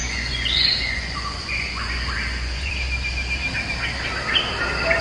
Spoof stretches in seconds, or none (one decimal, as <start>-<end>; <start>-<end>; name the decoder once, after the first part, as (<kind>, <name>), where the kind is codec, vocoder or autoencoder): 0.0-2.7 (vocoder, Vocos)